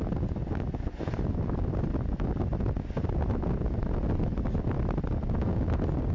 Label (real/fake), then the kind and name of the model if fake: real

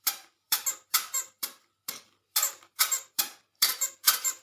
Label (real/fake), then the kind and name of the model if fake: fake, vocoder, BigVGAN v2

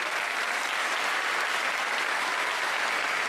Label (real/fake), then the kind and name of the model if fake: real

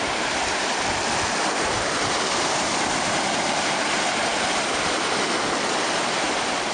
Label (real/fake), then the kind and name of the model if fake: real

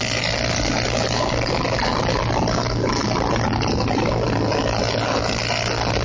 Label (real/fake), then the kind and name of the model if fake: real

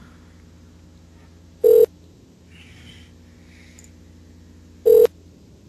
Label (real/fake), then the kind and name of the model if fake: real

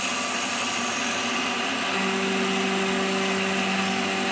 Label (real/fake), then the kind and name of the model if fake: real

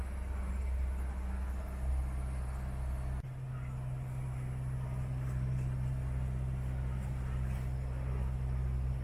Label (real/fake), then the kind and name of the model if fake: real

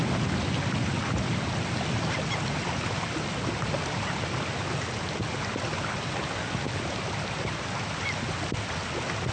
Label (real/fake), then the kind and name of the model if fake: real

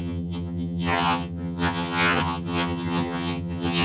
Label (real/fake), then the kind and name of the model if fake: fake, vocoder, HiFi-GAN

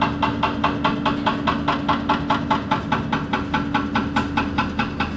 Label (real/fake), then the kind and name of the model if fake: real